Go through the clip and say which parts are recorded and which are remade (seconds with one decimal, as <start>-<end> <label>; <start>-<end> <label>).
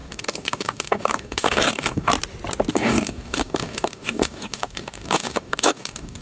0.0-2.1 remade; 2.1-2.7 recorded; 2.7-6.2 remade